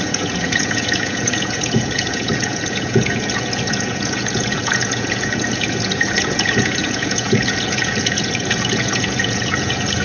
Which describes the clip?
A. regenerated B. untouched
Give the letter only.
A